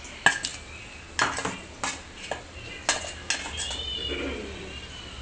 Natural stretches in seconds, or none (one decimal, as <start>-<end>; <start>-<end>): 0.0-5.2